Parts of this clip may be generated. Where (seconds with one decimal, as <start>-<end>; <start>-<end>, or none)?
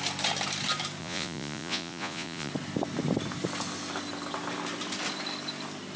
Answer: 1.0-2.5